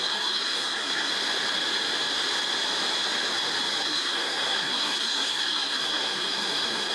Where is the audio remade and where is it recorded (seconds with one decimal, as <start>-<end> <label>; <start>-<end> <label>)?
0.0-1.1 remade; 1.1-3.8 recorded; 3.8-6.9 remade